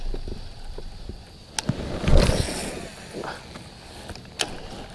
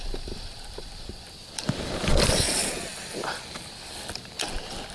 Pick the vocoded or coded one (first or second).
second